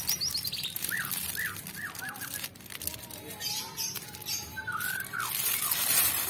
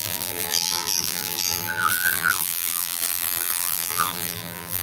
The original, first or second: first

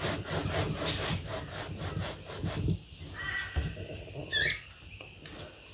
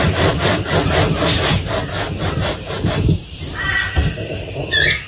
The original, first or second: first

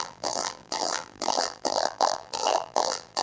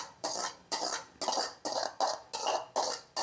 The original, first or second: second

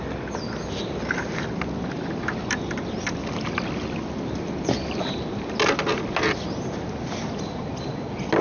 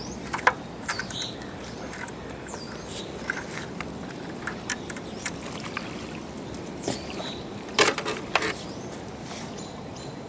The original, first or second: first